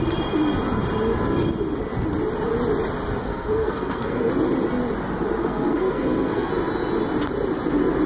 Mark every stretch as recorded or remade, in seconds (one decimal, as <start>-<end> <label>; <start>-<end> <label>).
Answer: 0.0-3.2 recorded; 3.2-4.3 remade; 4.3-5.4 recorded; 5.4-6.5 remade; 6.5-8.1 recorded